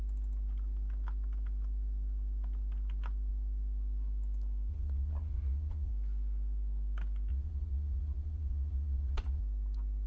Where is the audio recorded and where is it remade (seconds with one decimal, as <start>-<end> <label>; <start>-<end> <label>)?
0.0-4.7 recorded; 4.7-5.9 remade; 5.9-7.3 recorded; 7.3-9.4 remade; 9.4-10.1 recorded